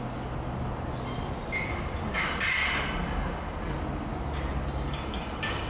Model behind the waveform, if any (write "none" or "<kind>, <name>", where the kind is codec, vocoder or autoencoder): none